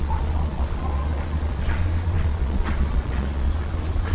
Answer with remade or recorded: remade